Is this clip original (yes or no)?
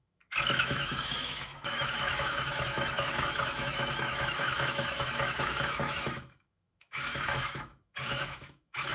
no